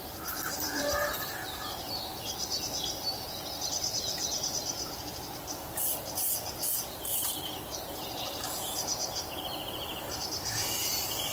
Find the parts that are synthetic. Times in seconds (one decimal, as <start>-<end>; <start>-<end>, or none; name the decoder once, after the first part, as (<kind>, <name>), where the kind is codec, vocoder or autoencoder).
0.0-4.6 (vocoder, BigVGAN v2); 5.5-11.3